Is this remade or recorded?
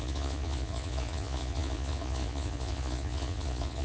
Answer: remade